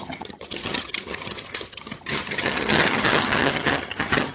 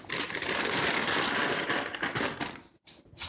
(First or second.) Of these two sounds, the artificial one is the first